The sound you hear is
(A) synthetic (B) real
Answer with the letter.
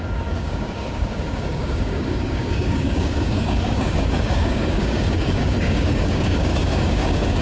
A